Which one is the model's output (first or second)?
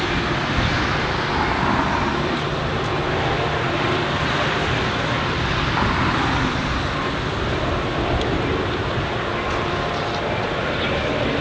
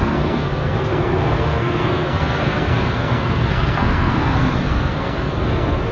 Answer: second